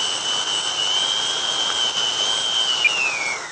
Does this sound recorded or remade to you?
recorded